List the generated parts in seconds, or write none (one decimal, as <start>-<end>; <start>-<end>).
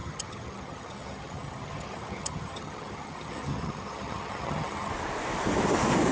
0.0-4.9